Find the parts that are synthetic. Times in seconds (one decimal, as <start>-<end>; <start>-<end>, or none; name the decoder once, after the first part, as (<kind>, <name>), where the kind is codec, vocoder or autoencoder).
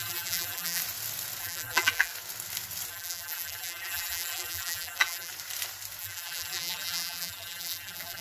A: 0.0-0.8 (vocoder, BigVGAN v2); 1.4-2.1; 2.9-5.3; 6.0-8.2